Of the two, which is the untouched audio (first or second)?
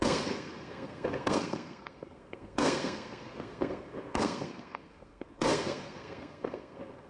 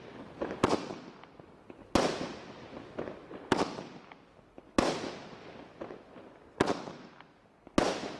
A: second